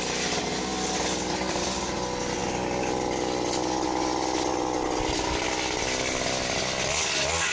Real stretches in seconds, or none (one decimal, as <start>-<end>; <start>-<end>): 0.0-7.5